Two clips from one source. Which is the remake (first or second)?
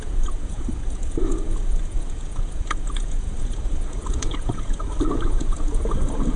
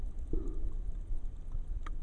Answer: first